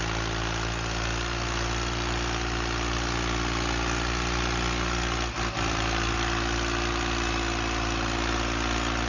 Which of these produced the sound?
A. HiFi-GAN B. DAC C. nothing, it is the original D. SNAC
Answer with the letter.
C